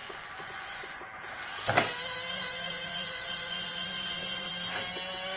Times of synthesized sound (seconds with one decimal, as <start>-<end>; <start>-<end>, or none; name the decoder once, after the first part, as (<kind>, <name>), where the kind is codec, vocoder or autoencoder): 0.0-1.0 (vocoder, Vocos); 2.3-4.5